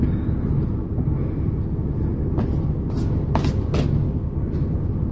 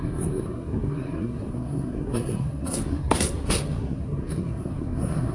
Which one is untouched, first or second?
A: first